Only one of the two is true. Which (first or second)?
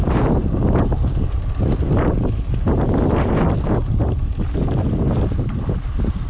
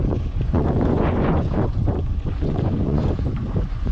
first